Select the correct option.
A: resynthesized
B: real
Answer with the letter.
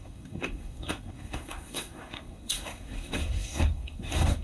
A